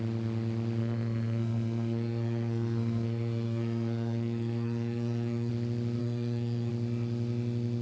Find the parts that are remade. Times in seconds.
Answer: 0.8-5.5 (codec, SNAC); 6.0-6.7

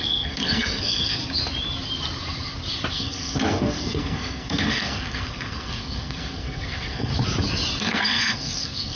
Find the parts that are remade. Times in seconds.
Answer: 0.0-1.2 (codec, SNAC); 2.9-7.1; 7.8-9.0